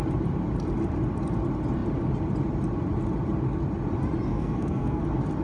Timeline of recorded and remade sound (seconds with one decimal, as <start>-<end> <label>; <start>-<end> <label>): 0.0-4.3 recorded; 4.3-5.0 remade; 5.0-5.4 recorded